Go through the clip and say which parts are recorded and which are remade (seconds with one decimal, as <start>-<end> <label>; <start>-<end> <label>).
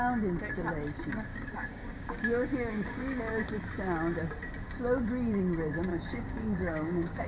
0.0-1.3 recorded; 1.3-3.2 remade; 3.2-5.9 recorded; 5.9-7.3 remade